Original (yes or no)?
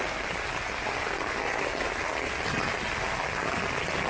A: yes